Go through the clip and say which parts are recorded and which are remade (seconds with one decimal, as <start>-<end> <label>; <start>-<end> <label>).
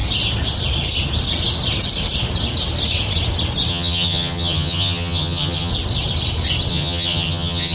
0.0-3.7 recorded; 3.7-5.7 remade; 5.7-6.7 recorded; 6.7-7.7 remade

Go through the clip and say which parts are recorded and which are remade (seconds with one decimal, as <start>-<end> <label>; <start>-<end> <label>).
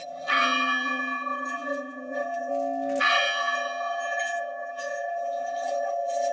0.0-2.5 remade; 2.5-3.0 recorded; 3.0-6.3 remade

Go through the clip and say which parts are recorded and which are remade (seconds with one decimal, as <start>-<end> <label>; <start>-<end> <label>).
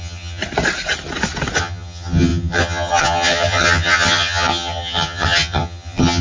0.0-0.4 remade; 0.4-1.6 recorded; 1.6-6.2 remade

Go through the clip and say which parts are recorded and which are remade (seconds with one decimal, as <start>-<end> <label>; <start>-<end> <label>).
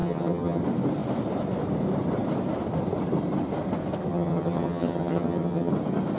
0.0-0.6 remade; 0.6-4.1 recorded; 4.1-5.7 remade; 5.7-6.2 recorded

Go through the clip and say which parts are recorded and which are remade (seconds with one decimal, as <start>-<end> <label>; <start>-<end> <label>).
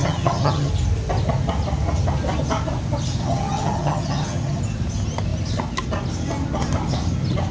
0.0-0.7 remade; 0.7-3.2 recorded; 3.2-4.6 remade; 4.6-7.5 recorded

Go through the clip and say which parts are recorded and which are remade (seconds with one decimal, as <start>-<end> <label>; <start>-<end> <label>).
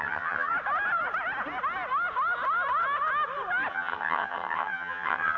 0.0-0.5 remade; 0.5-3.7 recorded; 3.7-5.4 remade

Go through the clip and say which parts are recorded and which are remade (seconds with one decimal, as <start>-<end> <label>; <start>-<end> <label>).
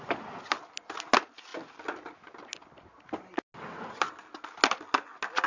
0.0-5.5 recorded